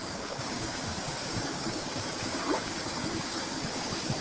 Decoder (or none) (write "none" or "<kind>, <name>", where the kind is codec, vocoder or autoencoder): codec, DAC